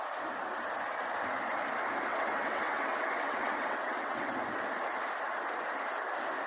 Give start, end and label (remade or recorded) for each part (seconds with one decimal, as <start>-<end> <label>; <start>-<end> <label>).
0.0-2.1 recorded; 2.1-4.3 remade; 4.3-6.5 recorded